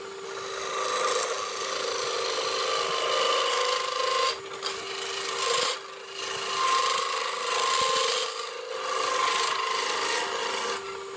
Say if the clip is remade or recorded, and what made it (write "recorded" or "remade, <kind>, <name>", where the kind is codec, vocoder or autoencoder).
recorded